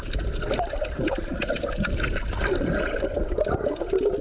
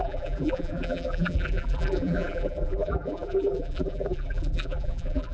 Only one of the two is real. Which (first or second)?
first